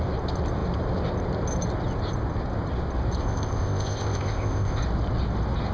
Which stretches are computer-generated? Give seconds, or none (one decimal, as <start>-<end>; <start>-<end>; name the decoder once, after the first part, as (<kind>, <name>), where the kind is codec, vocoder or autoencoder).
3.2-4.8 (codec, ZipCodec)